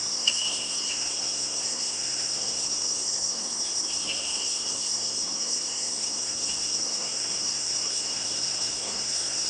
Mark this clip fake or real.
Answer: fake